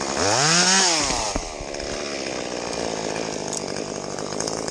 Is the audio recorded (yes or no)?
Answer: yes